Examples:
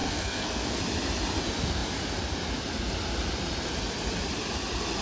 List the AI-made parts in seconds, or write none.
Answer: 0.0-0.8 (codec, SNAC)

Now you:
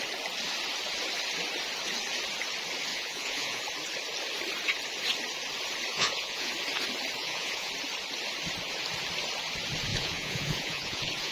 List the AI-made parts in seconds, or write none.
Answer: 2.9-3.6 (vocoder, Vocos); 5.9-6.5; 7.2-7.7; 9.9-11.3

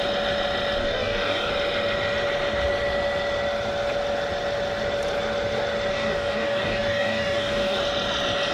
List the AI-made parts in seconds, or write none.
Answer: 0.8-1.5 (codec, DAC); 5.9-7.8

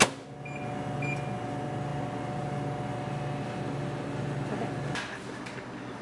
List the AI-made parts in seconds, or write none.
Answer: none

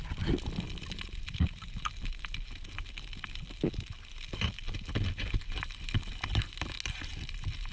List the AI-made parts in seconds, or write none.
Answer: none